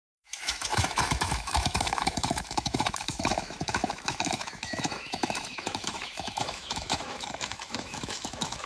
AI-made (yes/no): yes